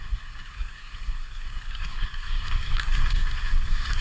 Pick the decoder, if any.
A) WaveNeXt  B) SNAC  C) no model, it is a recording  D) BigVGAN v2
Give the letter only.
B